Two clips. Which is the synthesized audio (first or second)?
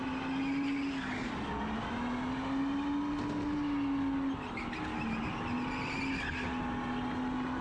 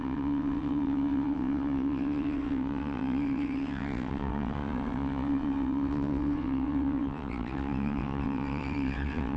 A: second